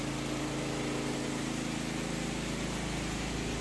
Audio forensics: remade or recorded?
recorded